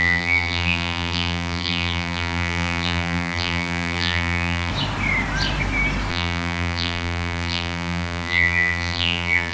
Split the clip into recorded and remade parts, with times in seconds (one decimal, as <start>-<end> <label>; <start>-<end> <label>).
0.0-4.7 remade; 4.7-6.1 recorded; 6.1-9.5 remade

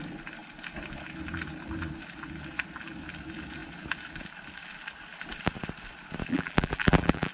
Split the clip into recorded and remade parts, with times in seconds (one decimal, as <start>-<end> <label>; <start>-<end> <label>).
0.0-6.3 recorded; 6.3-7.3 remade

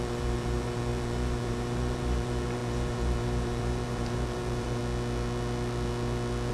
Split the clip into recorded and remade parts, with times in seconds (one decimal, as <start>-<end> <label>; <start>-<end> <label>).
0.0-4.8 remade; 4.8-6.5 recorded

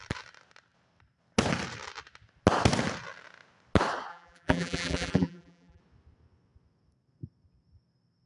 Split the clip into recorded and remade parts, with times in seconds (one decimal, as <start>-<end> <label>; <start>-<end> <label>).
0.0-4.1 recorded; 4.1-5.8 remade; 5.8-8.3 recorded

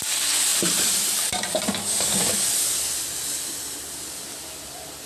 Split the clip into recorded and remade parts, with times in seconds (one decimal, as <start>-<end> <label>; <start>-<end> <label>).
0.0-0.5 recorded; 0.5-1.6 remade; 1.6-5.1 recorded

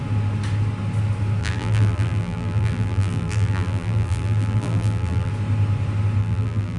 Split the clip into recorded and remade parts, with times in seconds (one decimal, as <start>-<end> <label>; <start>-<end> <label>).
0.0-1.4 recorded; 1.4-5.3 remade; 5.3-6.2 recorded; 6.2-6.8 remade